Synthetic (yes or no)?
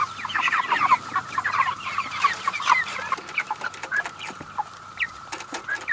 yes